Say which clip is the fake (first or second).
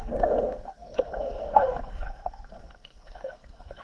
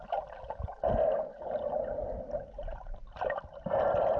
first